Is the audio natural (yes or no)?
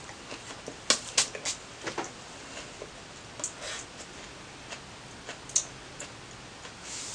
yes